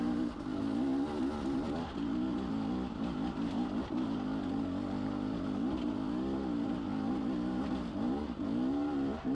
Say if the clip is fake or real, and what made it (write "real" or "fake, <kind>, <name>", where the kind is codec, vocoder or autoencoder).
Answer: real